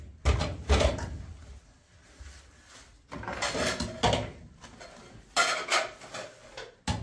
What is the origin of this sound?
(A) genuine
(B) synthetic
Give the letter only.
A